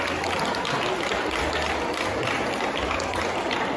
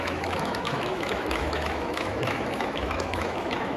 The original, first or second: first